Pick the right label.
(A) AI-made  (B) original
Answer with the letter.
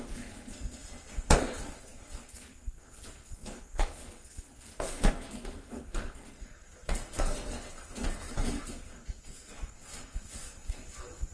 A